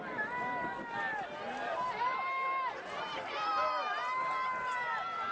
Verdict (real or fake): real